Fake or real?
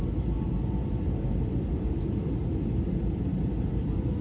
real